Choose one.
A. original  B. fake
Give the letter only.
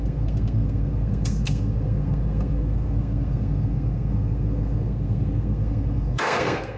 B